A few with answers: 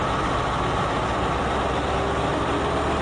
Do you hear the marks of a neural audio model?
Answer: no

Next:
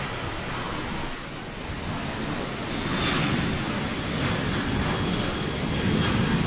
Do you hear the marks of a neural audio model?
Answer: no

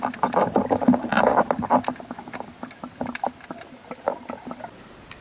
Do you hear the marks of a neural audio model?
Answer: no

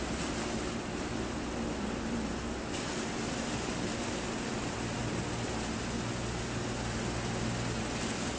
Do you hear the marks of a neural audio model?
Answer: no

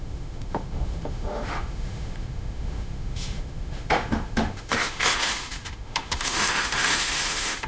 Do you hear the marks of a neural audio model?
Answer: yes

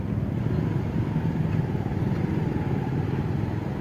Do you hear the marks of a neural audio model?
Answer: no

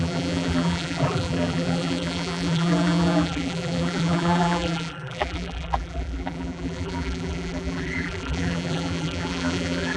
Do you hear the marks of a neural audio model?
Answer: yes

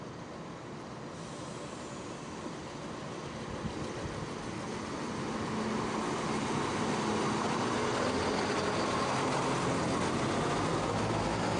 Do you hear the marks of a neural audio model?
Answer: no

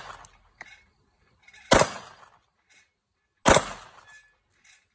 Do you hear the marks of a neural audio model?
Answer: no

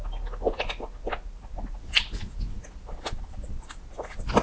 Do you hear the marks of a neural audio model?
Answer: no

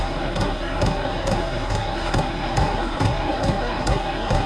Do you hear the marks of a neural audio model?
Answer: yes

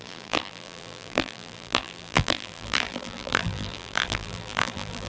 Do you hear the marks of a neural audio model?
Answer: yes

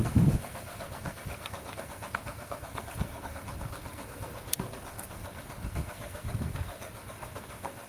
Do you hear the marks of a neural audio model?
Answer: yes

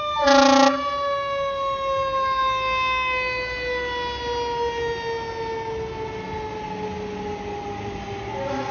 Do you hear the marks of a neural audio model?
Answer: no